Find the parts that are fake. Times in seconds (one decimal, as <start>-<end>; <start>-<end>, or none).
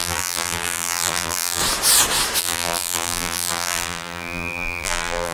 0.0-1.6; 2.4-5.3